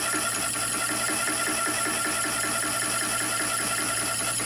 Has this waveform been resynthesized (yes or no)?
no